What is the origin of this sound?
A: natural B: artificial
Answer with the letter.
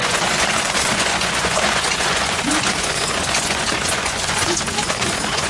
B